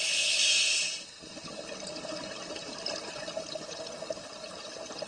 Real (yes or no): yes